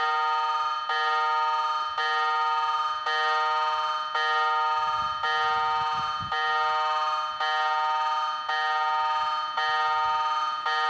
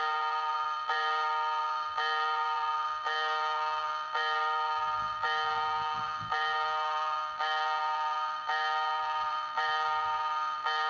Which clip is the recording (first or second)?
first